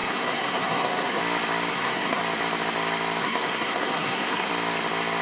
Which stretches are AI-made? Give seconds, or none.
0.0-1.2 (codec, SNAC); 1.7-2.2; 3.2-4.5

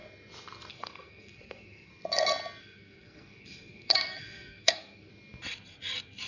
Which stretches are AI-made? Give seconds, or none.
0.7-1.9 (codec, SNAC); 2.6-5.1

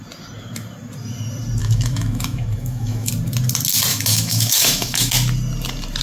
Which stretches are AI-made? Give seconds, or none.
1.6-3.1 (autoencoder, DAC-VAE); 3.9-5.1

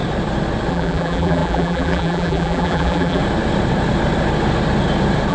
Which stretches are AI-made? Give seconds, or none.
0.7-3.2 (vocoder, BigVGAN v2)

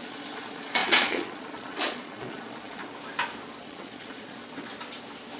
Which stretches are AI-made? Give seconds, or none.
0.0-2.8 (vocoder, Vocos); 3.6-4.4

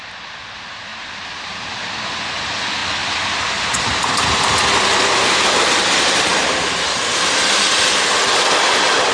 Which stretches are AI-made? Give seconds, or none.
0.9-1.7 (vocoder, BigVGAN v2)